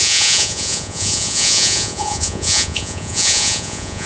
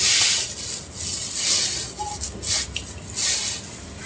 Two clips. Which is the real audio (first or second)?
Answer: second